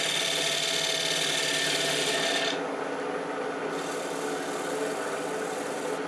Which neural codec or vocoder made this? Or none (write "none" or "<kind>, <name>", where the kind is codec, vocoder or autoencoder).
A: none